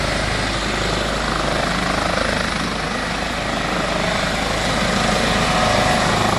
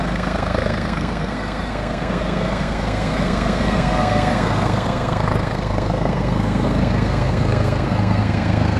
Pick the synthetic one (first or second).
second